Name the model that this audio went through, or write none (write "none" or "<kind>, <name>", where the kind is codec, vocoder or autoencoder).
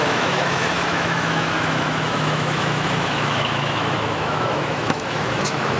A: autoencoder, DAC-VAE